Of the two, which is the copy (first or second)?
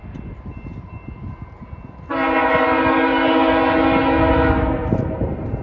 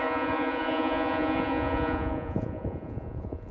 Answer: second